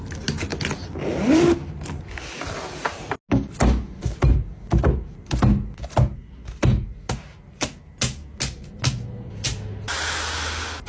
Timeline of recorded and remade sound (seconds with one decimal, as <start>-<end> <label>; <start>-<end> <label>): 0.0-10.9 recorded